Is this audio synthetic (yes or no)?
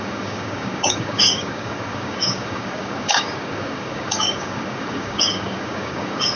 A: yes